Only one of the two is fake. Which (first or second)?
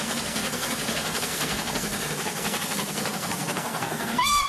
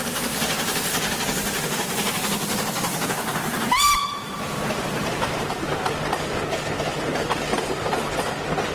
first